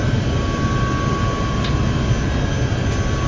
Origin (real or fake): real